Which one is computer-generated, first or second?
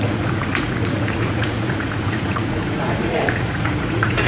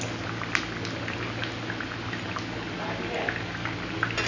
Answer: first